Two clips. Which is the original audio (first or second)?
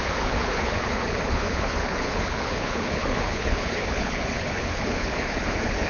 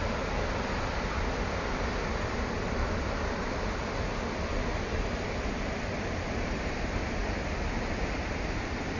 second